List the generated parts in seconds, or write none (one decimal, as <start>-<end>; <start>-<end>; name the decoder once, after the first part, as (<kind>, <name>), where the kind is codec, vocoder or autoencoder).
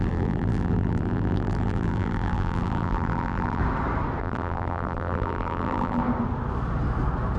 0.0-3.6 (vocoder, BigVGAN v2); 4.2-6.0